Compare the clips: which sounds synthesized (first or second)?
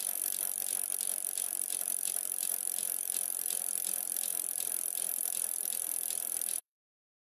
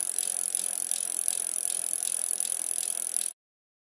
first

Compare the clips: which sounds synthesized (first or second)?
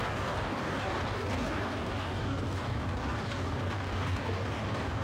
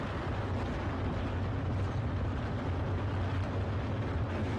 first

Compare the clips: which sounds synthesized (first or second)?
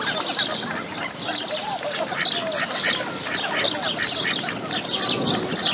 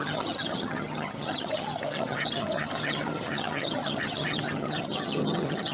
second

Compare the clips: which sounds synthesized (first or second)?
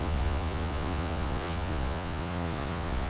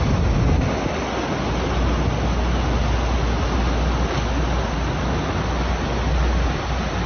first